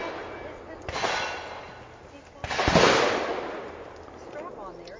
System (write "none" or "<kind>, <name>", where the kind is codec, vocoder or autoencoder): none